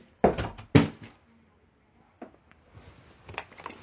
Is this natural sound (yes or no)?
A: yes